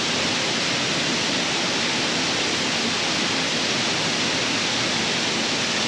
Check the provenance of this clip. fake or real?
real